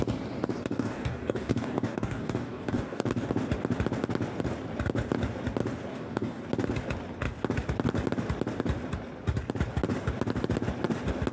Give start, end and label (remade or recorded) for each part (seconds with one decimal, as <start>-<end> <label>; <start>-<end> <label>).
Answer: 0.0-0.6 recorded; 0.6-3.3 remade; 3.3-5.9 recorded; 5.9-6.4 remade; 6.4-11.3 recorded